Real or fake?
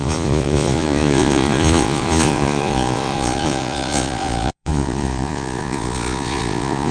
fake